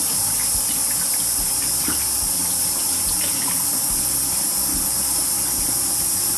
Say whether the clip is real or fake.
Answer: real